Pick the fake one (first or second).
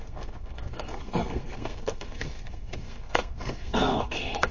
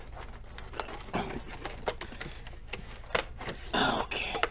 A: first